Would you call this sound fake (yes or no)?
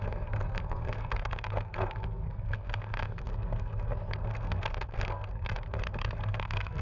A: yes